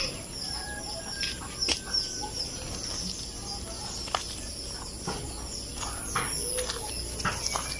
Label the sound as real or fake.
real